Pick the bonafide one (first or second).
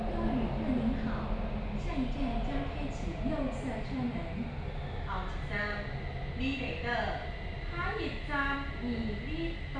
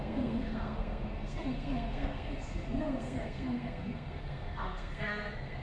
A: first